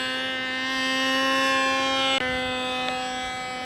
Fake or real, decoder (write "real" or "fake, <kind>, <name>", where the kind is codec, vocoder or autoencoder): real